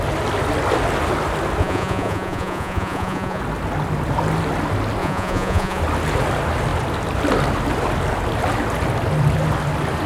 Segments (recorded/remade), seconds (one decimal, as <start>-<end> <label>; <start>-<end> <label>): 0.0-1.6 recorded; 1.6-3.4 remade; 3.4-5.0 recorded; 5.0-5.8 remade; 5.8-10.1 recorded